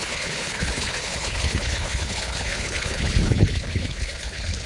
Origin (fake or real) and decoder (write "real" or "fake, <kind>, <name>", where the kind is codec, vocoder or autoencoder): fake, codec, HILCodec